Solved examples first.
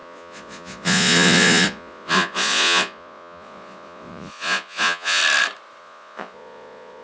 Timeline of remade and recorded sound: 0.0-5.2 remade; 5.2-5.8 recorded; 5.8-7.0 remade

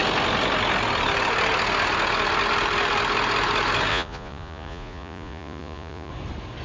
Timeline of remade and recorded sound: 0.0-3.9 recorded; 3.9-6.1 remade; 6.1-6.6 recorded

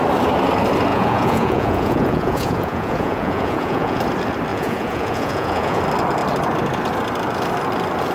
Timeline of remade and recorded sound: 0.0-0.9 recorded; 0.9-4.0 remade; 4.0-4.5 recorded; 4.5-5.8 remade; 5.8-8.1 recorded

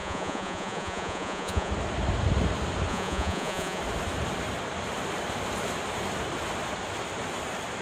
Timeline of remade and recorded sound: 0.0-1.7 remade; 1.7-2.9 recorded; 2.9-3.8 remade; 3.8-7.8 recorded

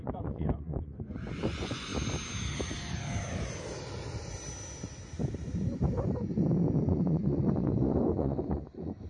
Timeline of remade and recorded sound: 0.0-1.9 remade; 1.9-6.8 recorded; 6.8-9.1 remade

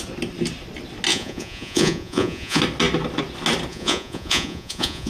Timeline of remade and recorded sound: 0.0-1.1 recorded; 1.1-2.6 remade; 2.6-3.7 recorded; 3.7-5.1 remade

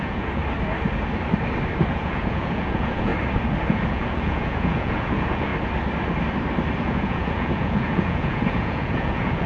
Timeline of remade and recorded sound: 0.0-0.4 remade; 0.4-1.9 recorded; 1.9-3.1 remade; 3.1-3.6 recorded; 3.6-5.5 remade; 5.5-6.8 recorded; 6.8-9.5 remade

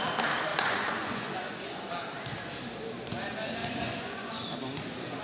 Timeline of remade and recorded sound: 0.0-0.5 recorded; 0.5-1.9 remade; 1.9-3.6 recorded; 3.6-4.3 remade; 4.3-5.2 recorded